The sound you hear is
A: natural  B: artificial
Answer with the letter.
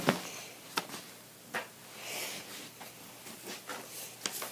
A